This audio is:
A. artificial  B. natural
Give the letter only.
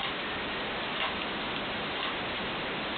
B